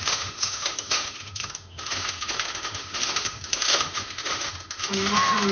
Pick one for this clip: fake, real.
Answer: fake